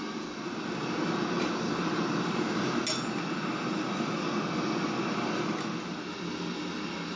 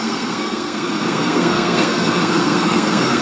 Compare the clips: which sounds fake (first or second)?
second